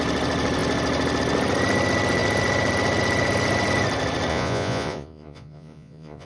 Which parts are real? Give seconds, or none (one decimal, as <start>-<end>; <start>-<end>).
0.0-4.3